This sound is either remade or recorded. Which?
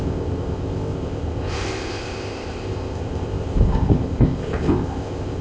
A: remade